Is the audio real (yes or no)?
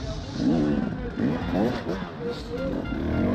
yes